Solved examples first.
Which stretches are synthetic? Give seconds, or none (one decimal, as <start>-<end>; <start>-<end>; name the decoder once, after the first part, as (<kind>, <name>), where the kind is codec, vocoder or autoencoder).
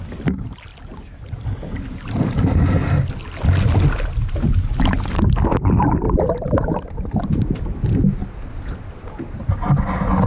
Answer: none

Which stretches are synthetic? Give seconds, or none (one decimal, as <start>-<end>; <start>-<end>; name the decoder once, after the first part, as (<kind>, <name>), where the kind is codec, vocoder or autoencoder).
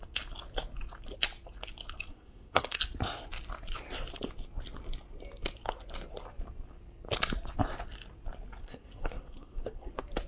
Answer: 2.1-2.8 (codec, SNAC); 8.6-9.9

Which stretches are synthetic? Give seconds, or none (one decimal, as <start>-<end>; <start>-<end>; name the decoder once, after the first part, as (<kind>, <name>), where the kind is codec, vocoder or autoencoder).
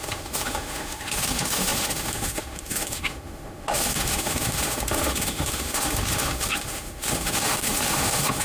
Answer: 0.0-8.4 (autoencoder, DAC-VAE)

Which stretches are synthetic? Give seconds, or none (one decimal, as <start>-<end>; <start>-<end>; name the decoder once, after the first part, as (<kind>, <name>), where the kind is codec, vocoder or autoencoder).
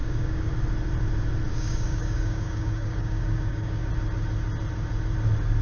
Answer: 0.0-0.5 (codec, DAC); 1.5-3.9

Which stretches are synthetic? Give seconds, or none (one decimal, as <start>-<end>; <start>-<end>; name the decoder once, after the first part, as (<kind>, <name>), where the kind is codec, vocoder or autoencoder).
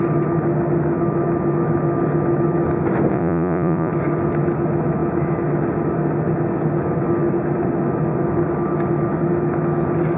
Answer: 3.1-3.9 (vocoder, Vocos)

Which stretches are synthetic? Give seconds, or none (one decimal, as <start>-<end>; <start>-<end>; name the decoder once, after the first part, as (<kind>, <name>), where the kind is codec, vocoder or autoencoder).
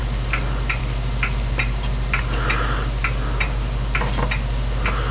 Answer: none